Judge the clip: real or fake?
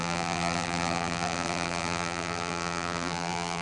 fake